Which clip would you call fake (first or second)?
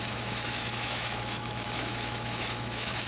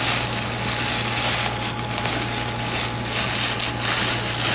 first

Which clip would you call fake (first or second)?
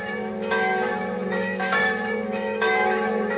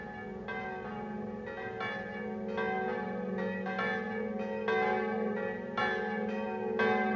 first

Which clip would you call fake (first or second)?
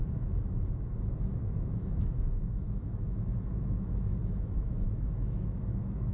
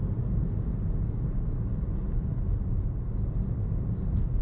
first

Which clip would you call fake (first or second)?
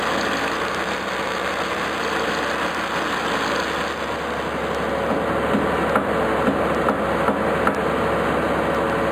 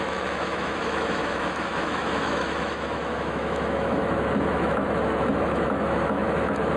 second